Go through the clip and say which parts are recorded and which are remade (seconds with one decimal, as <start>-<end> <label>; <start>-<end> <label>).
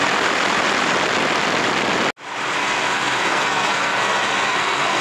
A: 0.0-2.6 recorded; 2.6-5.0 remade